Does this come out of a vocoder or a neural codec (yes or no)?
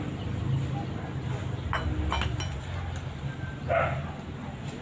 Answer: no